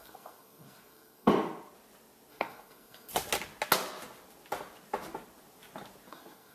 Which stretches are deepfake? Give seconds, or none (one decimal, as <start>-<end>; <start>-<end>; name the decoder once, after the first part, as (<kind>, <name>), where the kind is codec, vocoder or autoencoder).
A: 0.0-1.3 (codec, SNAC); 2.3-3.1; 6.1-6.5